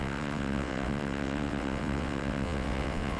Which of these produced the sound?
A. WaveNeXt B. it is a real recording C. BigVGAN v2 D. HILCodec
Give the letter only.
A